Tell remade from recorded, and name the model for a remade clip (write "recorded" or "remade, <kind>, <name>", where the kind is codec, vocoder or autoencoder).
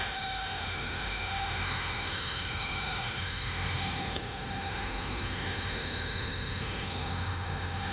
remade, autoencoder, DAC-VAE